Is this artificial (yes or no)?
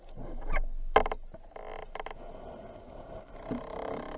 no